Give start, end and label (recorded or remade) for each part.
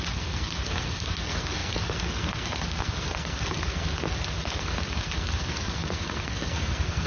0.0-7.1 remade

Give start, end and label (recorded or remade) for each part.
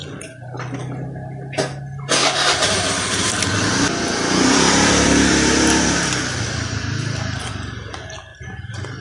0.0-2.2 recorded; 2.2-7.5 remade; 7.5-9.0 recorded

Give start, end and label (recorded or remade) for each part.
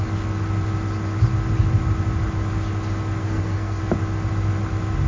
0.0-3.2 recorded; 3.2-3.8 remade; 3.8-5.1 recorded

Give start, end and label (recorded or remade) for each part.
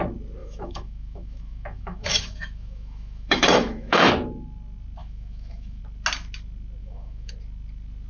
0.0-0.4 recorded; 0.4-4.1 remade; 4.1-5.0 recorded; 5.0-5.8 remade; 5.8-6.8 recorded; 6.8-7.3 remade; 7.3-8.1 recorded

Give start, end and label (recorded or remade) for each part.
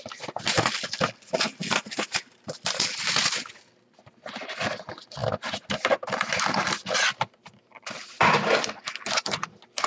0.0-9.9 recorded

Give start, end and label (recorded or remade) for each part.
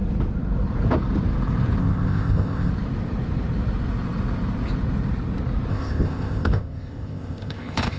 0.0-1.8 recorded; 1.8-2.7 remade; 2.7-5.7 recorded; 5.7-8.0 remade